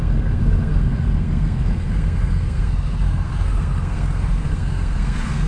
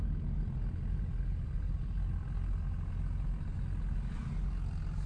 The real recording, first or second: second